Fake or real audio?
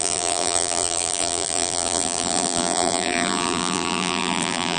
fake